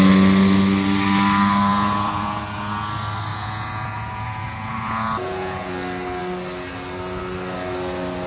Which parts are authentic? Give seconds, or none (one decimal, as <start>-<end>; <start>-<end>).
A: 0.0-1.7; 2.4-3.3; 5.7-8.3